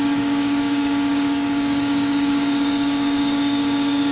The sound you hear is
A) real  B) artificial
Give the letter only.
B